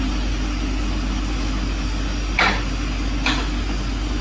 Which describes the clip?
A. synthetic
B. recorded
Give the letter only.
B